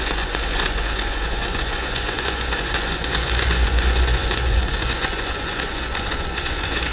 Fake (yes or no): yes